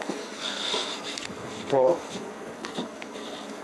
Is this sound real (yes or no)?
no